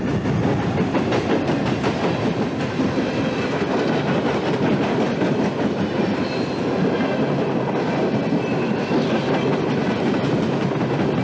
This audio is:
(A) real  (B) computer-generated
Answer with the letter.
A